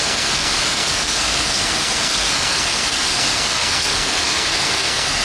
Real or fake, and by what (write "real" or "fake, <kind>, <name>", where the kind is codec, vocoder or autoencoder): fake, codec, SNAC